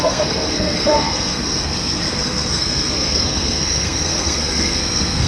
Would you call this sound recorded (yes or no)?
no